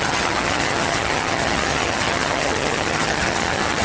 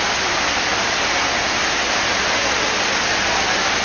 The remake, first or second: first